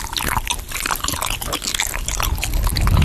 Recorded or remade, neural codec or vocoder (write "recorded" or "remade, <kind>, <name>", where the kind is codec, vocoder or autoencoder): recorded